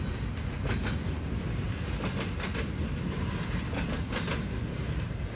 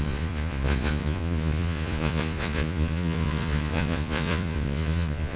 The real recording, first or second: first